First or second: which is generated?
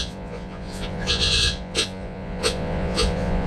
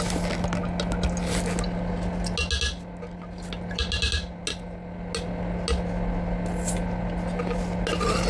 first